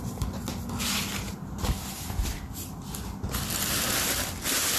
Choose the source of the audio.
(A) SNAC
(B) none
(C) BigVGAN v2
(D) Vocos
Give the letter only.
B